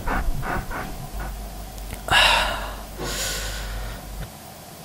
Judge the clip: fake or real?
real